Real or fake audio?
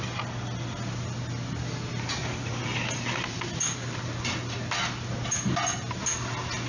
real